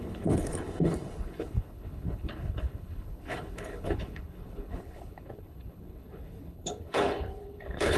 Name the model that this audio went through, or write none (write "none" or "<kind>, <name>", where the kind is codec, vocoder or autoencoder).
codec, HILCodec